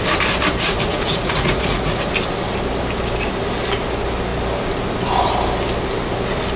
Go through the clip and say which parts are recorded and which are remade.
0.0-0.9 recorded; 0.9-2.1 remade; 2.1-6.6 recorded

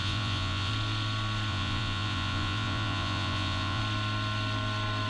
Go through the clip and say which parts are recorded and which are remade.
0.0-0.7 remade; 0.7-1.5 recorded; 1.5-3.8 remade; 3.8-5.1 recorded

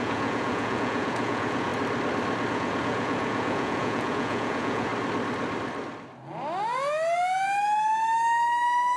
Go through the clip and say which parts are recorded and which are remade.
0.0-1.7 remade; 1.7-2.5 recorded; 2.5-4.9 remade; 4.9-9.0 recorded

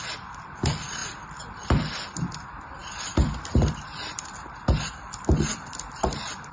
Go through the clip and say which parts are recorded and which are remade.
0.0-6.5 recorded

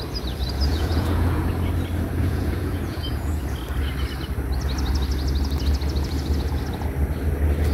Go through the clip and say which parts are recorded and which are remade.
0.0-0.7 recorded; 0.7-1.5 remade; 1.5-2.2 recorded; 2.2-3.4 remade; 3.4-7.7 recorded